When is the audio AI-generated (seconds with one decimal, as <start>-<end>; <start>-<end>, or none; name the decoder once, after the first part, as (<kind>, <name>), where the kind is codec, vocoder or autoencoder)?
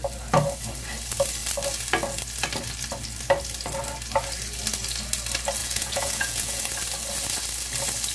5.6-6.6 (vocoder, Vocos)